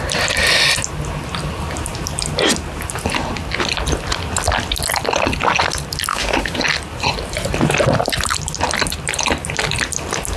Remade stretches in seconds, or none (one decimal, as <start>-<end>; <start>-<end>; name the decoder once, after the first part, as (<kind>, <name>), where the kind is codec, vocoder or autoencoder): 6.1-6.6 (autoencoder, DAC-VAE)